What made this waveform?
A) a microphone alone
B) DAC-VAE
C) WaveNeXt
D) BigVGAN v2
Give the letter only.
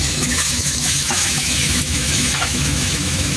B